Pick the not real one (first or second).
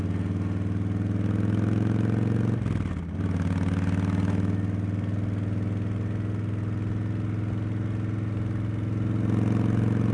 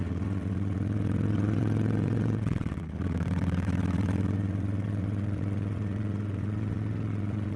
second